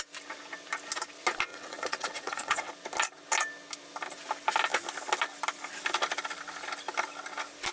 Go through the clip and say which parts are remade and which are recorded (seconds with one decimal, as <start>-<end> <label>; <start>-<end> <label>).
0.0-1.5 recorded; 1.5-2.7 remade; 2.7-7.7 recorded